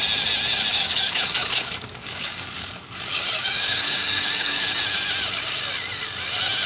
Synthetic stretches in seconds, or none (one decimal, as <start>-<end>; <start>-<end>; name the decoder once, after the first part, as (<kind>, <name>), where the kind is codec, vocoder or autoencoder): 0.7-4.7 (codec, DAC)